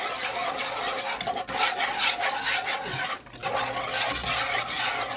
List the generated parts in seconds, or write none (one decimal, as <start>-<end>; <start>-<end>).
none